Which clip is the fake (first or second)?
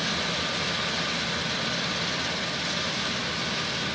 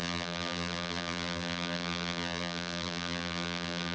second